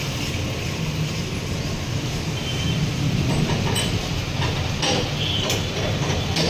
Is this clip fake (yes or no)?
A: no